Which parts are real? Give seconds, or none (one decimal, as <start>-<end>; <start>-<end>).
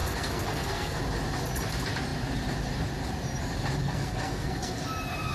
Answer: 1.0-3.8; 4.8-5.3